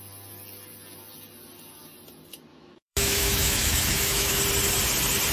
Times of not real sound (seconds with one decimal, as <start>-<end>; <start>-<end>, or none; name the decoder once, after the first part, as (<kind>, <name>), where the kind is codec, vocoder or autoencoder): 2.5-4.4 (autoencoder, DAC-VAE)